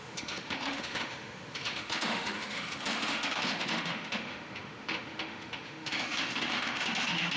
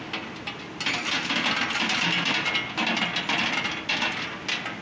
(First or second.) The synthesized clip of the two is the first